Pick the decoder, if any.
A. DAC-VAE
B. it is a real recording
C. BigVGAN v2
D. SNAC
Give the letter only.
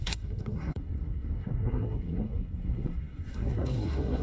D